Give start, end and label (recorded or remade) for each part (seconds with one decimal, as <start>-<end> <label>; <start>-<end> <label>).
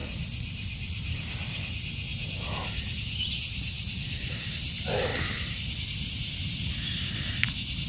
0.0-7.9 recorded